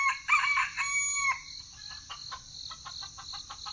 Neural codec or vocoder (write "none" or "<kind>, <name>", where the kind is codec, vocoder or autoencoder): none